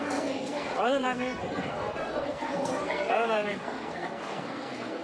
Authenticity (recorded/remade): remade